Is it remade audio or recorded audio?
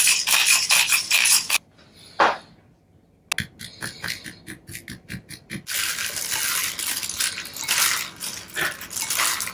recorded